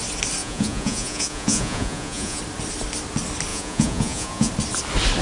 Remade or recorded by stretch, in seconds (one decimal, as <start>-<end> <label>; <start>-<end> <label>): 0.0-0.4 recorded; 0.4-2.4 remade; 2.4-3.5 recorded; 3.5-4.5 remade; 4.5-5.2 recorded